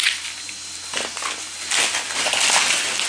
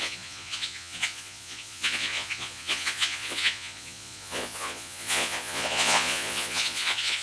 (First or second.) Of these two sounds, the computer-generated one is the second